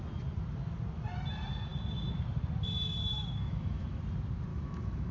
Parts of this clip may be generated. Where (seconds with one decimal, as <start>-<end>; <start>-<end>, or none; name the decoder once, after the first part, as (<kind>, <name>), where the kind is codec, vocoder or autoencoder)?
3.0-4.0 (autoencoder, DAC-VAE); 4.5-5.1